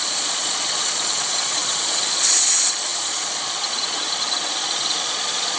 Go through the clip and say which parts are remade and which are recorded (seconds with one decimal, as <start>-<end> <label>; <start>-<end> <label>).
0.0-5.6 remade

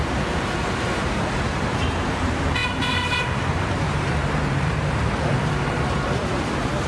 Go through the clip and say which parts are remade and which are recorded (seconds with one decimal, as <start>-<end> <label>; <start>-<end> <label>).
0.0-6.9 remade

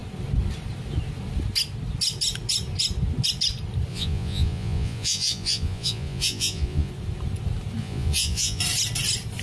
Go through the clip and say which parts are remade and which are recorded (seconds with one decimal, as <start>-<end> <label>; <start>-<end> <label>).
0.0-3.9 recorded; 3.9-6.9 remade; 6.9-7.8 recorded; 7.8-8.6 remade; 8.6-9.4 recorded

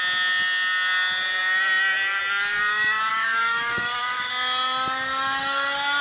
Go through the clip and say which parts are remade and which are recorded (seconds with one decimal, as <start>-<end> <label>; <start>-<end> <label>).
0.0-3.1 recorded; 3.1-4.3 remade; 4.3-6.0 recorded

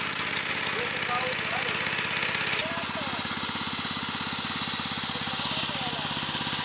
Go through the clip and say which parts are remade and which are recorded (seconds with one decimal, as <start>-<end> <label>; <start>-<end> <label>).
0.0-6.6 recorded

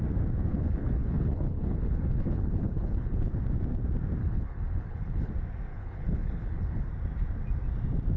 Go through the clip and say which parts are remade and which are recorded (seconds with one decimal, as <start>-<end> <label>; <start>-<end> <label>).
0.0-0.5 recorded; 0.5-3.3 remade; 3.3-4.2 recorded; 4.2-5.3 remade; 5.3-5.7 recorded; 5.7-6.9 remade; 6.9-8.2 recorded

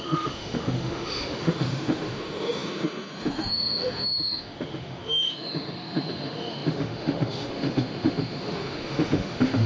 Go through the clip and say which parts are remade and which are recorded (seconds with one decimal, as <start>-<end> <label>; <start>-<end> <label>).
0.0-9.7 remade